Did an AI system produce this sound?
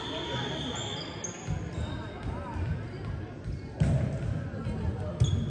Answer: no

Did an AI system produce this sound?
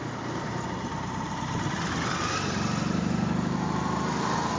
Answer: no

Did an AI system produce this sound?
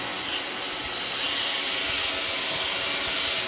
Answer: no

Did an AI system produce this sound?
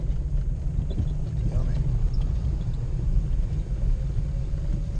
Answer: no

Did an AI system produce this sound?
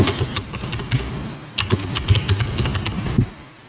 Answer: no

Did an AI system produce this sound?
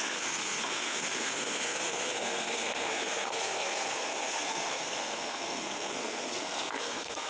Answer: yes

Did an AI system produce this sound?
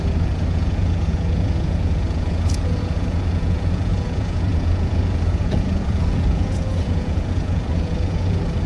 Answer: yes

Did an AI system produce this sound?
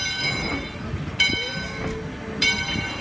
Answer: no